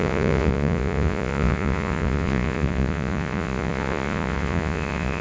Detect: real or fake fake